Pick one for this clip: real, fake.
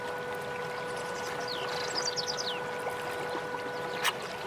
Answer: real